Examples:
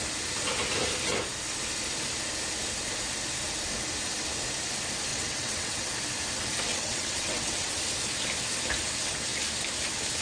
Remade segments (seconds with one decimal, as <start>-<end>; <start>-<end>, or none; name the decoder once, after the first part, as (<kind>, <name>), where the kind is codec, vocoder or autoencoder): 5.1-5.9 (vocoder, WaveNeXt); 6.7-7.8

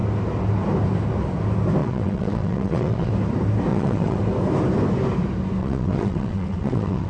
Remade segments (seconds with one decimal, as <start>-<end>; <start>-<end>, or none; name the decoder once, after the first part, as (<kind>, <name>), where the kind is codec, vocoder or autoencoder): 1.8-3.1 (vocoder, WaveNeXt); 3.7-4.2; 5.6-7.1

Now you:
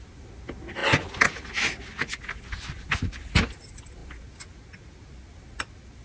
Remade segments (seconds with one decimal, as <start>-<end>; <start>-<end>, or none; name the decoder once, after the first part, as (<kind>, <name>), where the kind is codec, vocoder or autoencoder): none